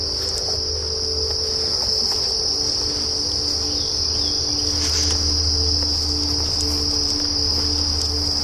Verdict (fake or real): real